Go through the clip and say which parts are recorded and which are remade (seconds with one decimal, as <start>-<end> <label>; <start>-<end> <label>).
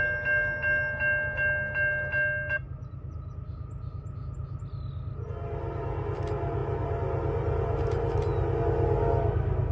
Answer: 0.0-9.7 recorded